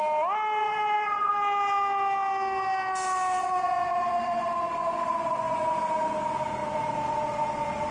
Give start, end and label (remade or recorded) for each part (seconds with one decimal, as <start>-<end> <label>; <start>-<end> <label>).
0.0-0.6 recorded; 0.6-1.3 remade; 1.3-3.4 recorded; 3.4-5.8 remade; 5.8-7.9 recorded